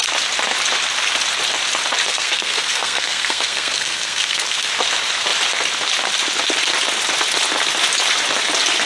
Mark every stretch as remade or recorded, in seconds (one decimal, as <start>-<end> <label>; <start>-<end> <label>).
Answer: 0.0-2.1 recorded; 2.1-4.7 remade; 4.7-8.9 recorded